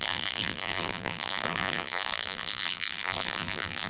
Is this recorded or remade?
remade